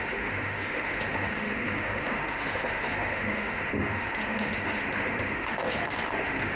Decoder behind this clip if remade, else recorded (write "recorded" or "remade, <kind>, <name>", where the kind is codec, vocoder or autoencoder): remade, autoencoder, DAC-VAE